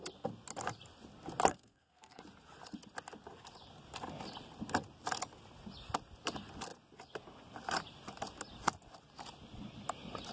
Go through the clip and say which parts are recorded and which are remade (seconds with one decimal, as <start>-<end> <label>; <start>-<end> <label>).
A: 0.0-1.5 recorded; 1.5-2.2 remade; 2.2-10.3 recorded